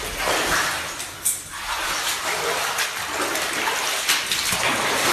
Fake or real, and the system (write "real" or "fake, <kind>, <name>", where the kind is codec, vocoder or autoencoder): real